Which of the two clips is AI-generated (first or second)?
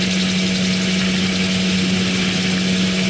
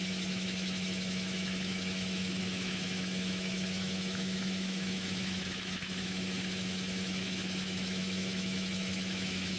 second